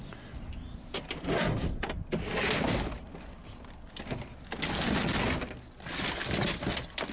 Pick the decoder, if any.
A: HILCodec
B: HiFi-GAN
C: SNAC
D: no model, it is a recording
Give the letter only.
D